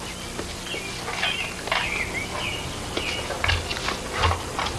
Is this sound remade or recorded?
recorded